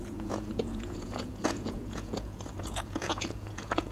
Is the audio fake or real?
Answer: fake